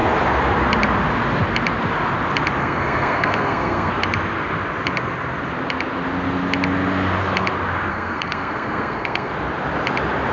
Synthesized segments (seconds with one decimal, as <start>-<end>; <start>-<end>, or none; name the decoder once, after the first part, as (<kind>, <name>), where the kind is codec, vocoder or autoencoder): 2.6-3.9 (codec, SNAC); 7.9-9.3